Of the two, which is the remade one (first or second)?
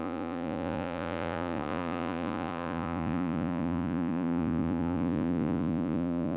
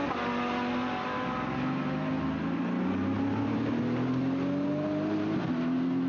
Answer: first